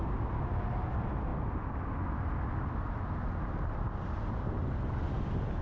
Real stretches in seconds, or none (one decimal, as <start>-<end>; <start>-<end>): 0.0-5.6